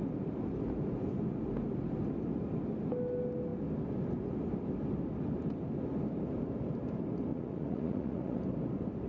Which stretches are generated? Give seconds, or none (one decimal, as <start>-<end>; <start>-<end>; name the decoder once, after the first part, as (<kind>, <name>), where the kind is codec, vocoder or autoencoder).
7.3-8.4 (vocoder, Vocos)